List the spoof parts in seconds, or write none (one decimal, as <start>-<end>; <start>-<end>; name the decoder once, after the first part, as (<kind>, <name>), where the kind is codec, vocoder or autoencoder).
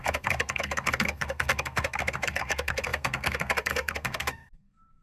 0.0-5.0 (codec, SNAC)